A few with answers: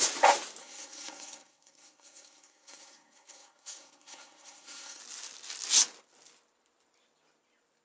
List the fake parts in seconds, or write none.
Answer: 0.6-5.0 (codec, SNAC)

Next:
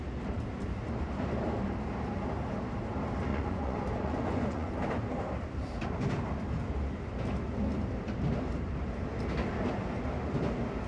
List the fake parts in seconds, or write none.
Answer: 3.3-4.7 (vocoder, Vocos)

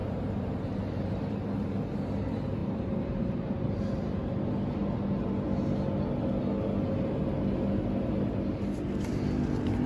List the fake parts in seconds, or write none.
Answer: 0.0-2.0 (vocoder, BigVGAN v2); 2.6-3.8

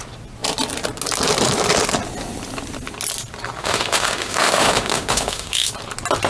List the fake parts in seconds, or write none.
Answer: 3.6-5.7 (autoencoder, DAC-VAE)